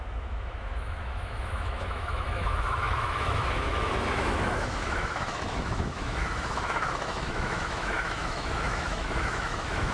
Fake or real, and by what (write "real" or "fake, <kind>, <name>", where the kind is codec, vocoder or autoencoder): fake, autoencoder, DAC-VAE